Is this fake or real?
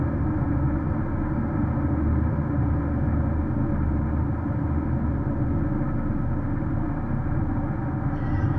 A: real